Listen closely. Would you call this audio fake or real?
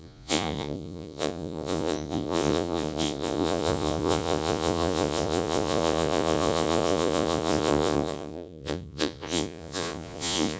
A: fake